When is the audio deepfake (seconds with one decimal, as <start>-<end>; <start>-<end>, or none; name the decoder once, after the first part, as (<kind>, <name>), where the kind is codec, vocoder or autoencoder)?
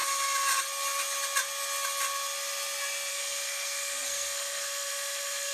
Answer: 3.1-5.5 (codec, SNAC)